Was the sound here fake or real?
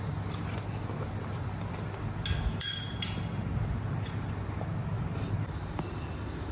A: real